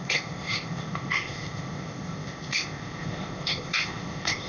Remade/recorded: remade